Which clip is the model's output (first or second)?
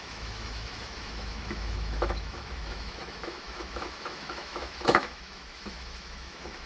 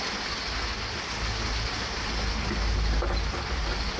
first